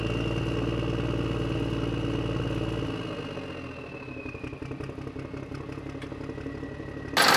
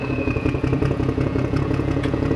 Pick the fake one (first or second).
second